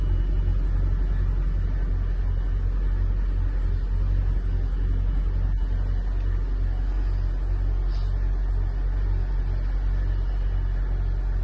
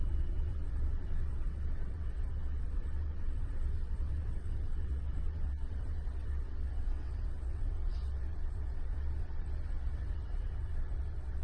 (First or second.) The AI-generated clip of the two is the second